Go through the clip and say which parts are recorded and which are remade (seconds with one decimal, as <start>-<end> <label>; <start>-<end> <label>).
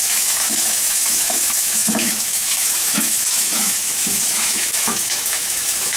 0.0-6.0 remade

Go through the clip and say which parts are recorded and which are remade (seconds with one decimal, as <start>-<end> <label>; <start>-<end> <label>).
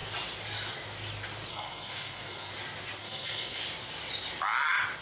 0.0-1.5 recorded; 1.5-2.5 remade; 2.5-3.0 recorded; 3.0-3.6 remade; 3.6-5.0 recorded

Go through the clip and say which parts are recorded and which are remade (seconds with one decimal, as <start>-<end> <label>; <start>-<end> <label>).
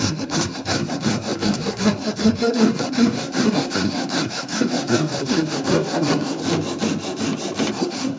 0.0-6.4 remade; 6.4-7.7 recorded; 7.7-8.2 remade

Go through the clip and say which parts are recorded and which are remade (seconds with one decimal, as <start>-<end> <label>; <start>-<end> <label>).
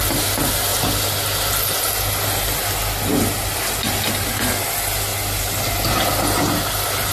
0.0-7.1 recorded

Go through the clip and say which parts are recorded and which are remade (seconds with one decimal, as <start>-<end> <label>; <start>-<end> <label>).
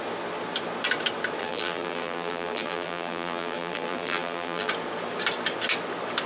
0.0-1.4 recorded; 1.4-4.7 remade; 4.7-6.3 recorded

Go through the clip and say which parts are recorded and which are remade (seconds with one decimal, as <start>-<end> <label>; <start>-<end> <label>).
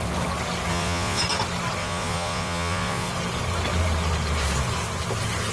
0.0-0.7 recorded; 0.7-1.2 remade; 1.2-1.8 recorded; 1.8-3.1 remade; 3.1-5.5 recorded